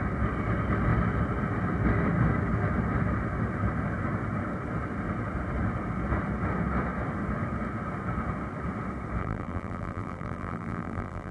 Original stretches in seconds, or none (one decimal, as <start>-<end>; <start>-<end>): 0.0-9.2